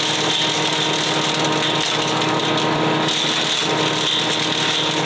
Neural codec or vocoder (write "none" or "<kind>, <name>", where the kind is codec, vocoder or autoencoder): none